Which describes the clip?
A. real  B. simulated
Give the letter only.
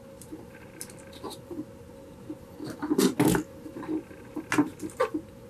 A